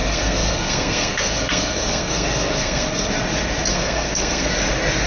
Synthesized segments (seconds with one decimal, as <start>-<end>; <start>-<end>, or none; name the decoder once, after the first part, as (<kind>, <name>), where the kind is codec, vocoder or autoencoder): 0.0-3.1 (codec, SNAC); 3.7-4.5